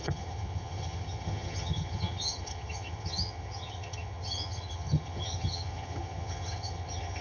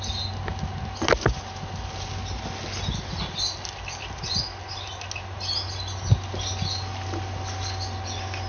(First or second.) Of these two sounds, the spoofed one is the first